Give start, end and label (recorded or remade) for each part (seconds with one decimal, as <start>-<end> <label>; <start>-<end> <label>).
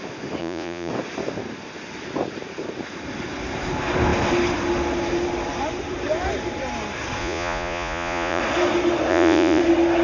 0.0-0.4 recorded; 0.4-0.9 remade; 0.9-7.2 recorded; 7.2-8.4 remade; 8.4-9.1 recorded; 9.1-9.6 remade; 9.6-10.0 recorded